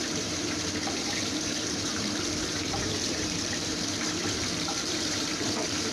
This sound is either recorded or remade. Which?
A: remade